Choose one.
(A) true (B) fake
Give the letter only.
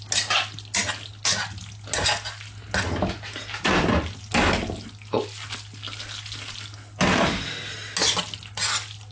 A